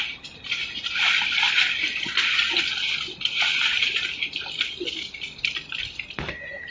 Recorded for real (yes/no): yes